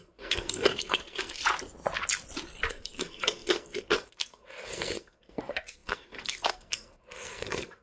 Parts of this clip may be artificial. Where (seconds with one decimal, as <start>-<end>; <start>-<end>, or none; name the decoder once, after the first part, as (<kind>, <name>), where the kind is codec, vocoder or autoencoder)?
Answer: 0.0-1.4 (codec, SNAC); 2.7-7.8